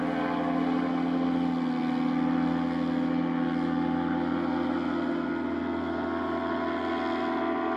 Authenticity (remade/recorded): recorded